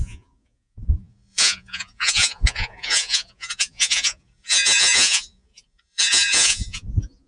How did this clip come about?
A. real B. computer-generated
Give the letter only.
B